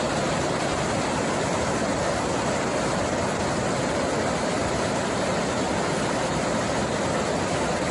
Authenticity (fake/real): real